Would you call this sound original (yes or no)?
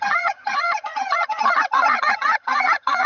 no